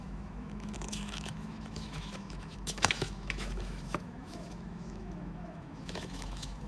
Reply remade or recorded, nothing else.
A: remade